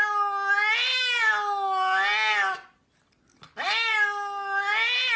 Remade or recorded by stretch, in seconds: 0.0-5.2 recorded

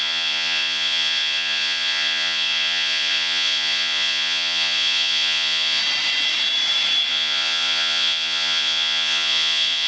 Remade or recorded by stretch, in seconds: 0.0-5.8 remade; 5.8-7.1 recorded; 7.1-9.9 remade

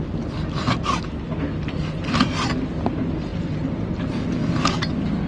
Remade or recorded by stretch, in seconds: 0.0-5.3 recorded

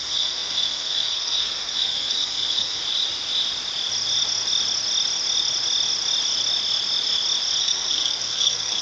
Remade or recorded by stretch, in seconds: 0.0-2.8 remade; 2.8-7.6 recorded; 7.6-8.8 remade

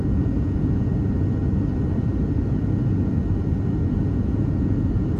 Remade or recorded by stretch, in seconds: 0.0-0.9 remade; 0.9-4.0 recorded; 4.0-5.2 remade

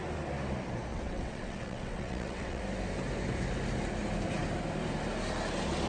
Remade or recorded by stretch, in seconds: 0.0-0.9 recorded; 0.9-2.6 remade; 2.6-5.9 recorded